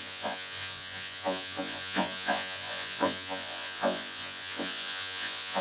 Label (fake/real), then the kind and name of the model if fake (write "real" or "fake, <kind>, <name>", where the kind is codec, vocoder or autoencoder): fake, vocoder, Vocos